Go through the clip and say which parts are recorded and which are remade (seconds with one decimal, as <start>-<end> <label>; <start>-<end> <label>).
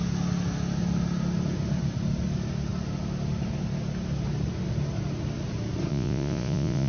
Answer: 0.0-5.9 recorded; 5.9-6.9 remade